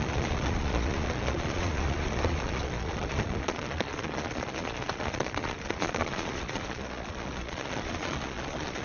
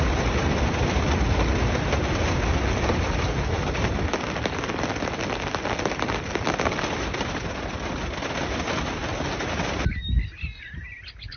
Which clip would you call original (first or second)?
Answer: second